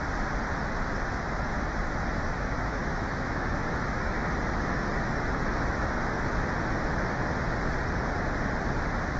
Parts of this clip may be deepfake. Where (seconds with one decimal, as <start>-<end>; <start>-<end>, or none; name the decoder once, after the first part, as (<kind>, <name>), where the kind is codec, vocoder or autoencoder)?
1.9-6.4 (autoencoder, DAC-VAE)